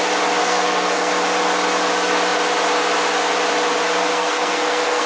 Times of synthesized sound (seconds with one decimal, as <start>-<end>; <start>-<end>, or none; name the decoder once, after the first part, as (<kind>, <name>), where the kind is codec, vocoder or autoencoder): 0.4-1.1 (codec, SNAC); 4.1-5.1